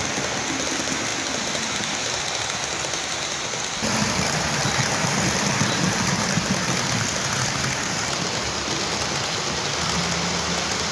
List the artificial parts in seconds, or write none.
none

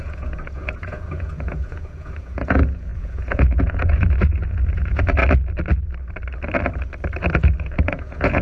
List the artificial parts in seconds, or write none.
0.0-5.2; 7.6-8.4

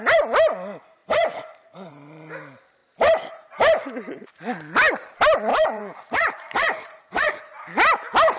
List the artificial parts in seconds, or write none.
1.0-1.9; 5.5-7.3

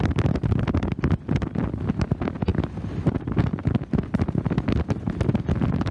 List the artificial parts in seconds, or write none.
none